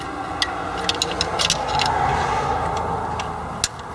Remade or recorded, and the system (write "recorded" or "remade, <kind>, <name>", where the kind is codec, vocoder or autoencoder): recorded